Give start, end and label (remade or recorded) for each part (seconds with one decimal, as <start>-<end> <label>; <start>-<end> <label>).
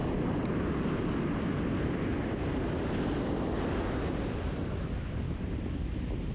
0.0-6.3 recorded